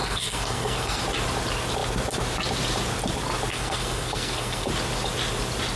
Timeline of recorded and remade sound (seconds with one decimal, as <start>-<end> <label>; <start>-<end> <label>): 0.0-1.0 remade; 1.0-3.5 recorded; 3.5-4.7 remade; 4.7-5.8 recorded